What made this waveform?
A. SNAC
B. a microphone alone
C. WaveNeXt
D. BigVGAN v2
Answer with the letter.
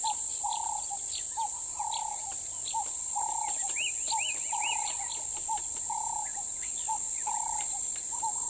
B